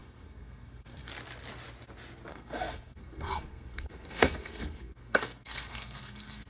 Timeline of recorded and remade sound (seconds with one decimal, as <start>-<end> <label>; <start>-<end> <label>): 0.0-1.1 remade; 1.1-2.3 recorded; 2.3-6.5 remade